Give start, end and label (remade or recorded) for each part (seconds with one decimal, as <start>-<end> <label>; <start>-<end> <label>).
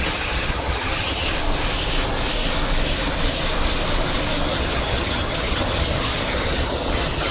0.0-1.3 remade; 1.3-4.5 recorded; 4.5-7.3 remade